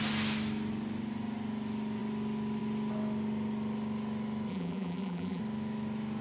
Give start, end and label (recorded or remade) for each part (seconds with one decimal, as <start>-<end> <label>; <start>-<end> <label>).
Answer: 0.0-4.5 recorded; 4.5-5.4 remade; 5.4-6.2 recorded